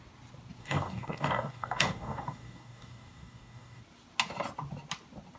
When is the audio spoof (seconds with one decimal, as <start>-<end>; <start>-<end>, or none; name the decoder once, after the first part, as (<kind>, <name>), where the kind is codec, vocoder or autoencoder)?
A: 0.6-3.8 (codec, DAC)